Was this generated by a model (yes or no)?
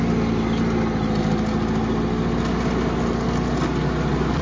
no